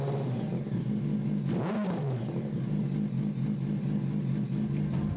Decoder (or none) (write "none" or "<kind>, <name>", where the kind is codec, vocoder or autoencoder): none